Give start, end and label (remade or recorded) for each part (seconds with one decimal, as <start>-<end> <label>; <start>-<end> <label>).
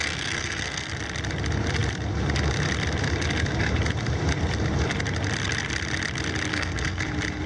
0.0-0.9 remade; 0.9-6.5 recorded; 6.5-7.1 remade; 7.1-7.5 recorded